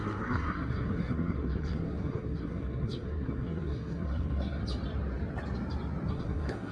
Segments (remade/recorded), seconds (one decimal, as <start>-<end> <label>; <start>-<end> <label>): 0.0-4.6 remade; 4.6-6.1 recorded; 6.1-6.7 remade